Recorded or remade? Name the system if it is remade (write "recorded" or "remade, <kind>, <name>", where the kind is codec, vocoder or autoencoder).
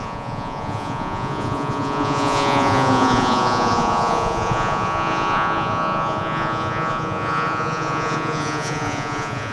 remade, vocoder, Vocos